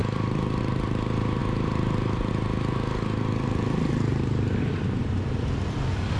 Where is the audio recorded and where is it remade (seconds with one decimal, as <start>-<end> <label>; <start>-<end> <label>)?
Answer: 0.0-0.6 remade; 0.6-1.4 recorded; 1.4-2.3 remade; 2.3-4.1 recorded; 4.1-5.8 remade; 5.8-6.2 recorded